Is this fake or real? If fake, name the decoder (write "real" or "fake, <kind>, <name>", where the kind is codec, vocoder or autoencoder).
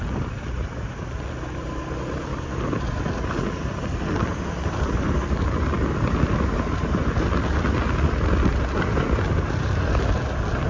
real